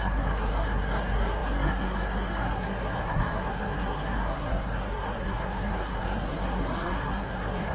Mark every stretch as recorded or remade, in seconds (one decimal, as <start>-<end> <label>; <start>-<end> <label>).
0.0-7.7 remade